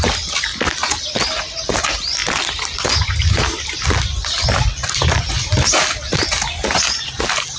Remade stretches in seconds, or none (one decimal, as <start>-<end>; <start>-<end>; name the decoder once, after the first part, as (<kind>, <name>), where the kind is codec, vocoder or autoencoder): none